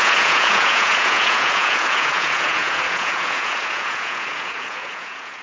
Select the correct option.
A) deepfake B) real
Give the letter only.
A